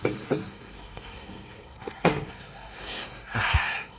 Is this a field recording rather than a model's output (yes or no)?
no